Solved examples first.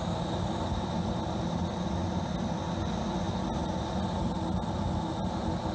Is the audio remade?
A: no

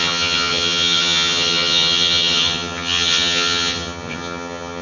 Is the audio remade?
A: yes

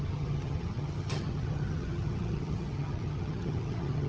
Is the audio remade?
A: yes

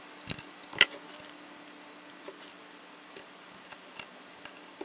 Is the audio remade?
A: no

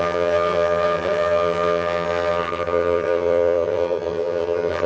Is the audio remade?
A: yes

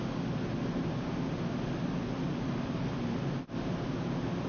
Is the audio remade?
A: no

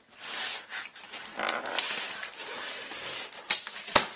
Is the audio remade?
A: no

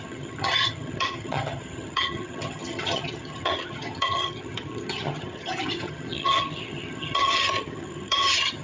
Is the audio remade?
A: yes